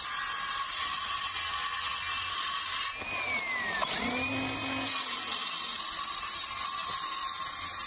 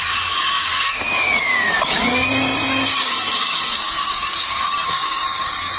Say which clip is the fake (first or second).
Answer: second